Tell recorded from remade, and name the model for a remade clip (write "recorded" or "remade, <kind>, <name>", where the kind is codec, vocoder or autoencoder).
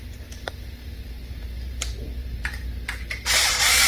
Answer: remade, vocoder, BigVGAN v2